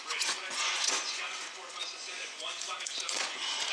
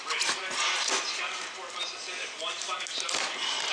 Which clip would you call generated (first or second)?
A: first